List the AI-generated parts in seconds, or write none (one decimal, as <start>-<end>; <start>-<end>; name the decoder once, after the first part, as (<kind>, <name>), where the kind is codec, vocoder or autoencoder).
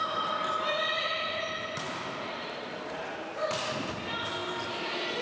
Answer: 0.0-4.4 (vocoder, BigVGAN v2)